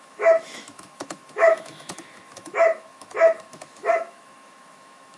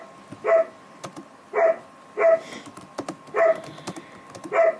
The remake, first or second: first